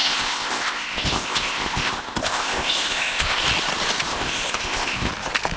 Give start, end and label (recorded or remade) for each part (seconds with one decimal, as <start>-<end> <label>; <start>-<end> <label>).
0.0-3.4 remade; 3.4-4.1 recorded; 4.1-5.1 remade; 5.1-5.6 recorded